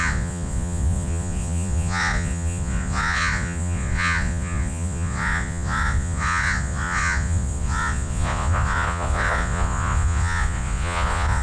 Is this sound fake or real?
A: fake